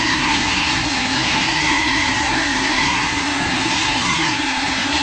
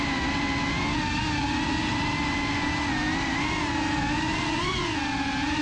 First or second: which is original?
second